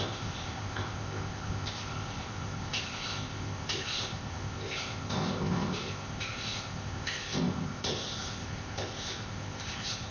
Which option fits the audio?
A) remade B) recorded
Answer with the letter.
A